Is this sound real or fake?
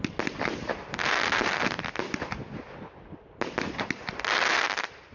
real